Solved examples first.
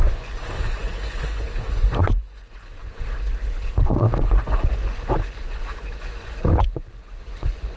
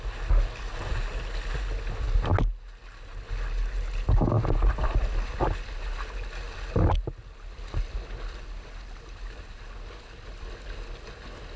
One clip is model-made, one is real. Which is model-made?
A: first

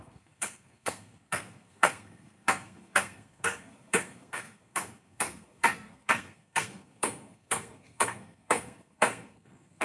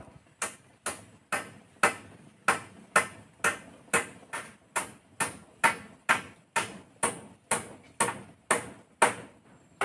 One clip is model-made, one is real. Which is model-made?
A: first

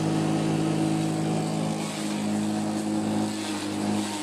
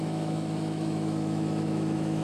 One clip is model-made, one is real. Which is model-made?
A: second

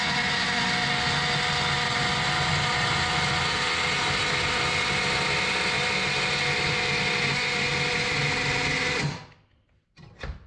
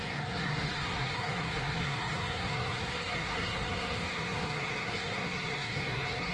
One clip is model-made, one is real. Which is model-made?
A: second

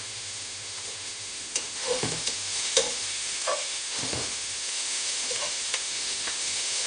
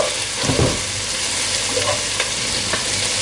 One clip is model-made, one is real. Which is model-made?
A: first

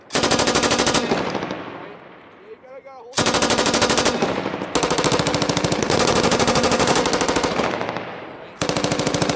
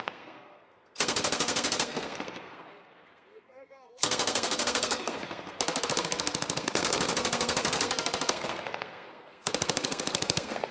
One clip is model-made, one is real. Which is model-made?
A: second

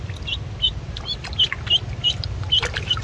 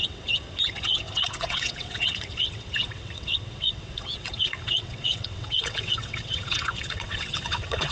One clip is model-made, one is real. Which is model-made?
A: second